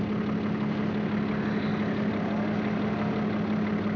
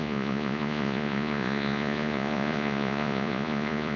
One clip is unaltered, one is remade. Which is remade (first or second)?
second